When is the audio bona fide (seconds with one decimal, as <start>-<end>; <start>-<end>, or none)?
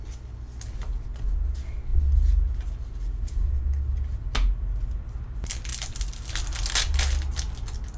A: 0.0-8.0